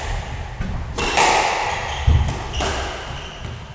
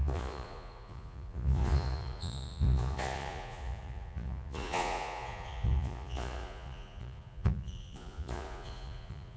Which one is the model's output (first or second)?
second